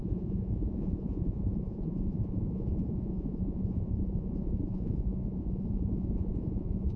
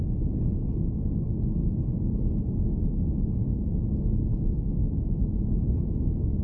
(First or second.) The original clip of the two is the second